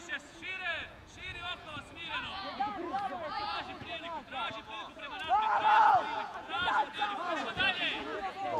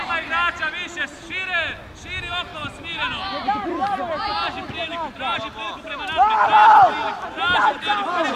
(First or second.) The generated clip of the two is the first